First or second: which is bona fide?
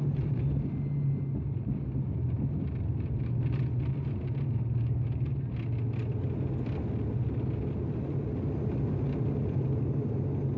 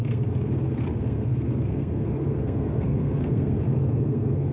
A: first